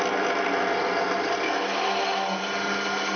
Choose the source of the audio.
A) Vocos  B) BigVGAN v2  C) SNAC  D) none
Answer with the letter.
D